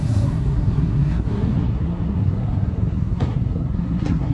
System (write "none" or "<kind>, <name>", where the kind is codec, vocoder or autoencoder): codec, SNAC